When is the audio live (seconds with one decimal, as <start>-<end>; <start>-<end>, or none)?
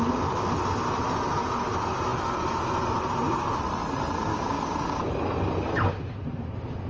0.0-4.3; 5.1-6.9